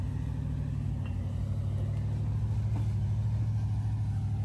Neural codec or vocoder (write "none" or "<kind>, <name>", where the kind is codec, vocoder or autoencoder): none